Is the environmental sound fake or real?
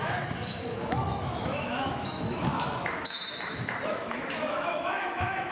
fake